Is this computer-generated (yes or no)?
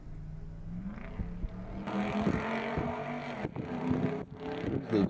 no